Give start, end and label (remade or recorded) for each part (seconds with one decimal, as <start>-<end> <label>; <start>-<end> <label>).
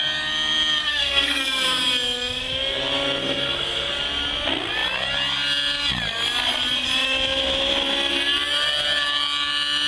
0.0-0.8 recorded; 0.8-1.4 remade; 1.4-3.2 recorded; 3.2-3.9 remade; 3.9-9.9 recorded